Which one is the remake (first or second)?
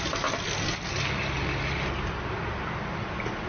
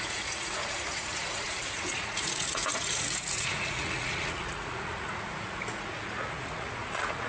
second